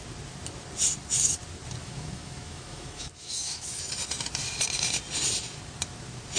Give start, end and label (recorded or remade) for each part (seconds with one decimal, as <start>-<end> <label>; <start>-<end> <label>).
0.0-1.8 recorded; 1.8-3.9 remade; 3.9-6.4 recorded